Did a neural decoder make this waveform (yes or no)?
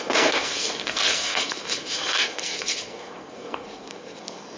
yes